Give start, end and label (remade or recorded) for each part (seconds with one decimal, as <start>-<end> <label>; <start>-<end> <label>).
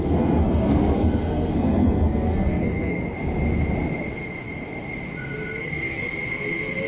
0.0-3.0 remade; 3.0-5.6 recorded; 5.6-6.0 remade; 6.0-6.9 recorded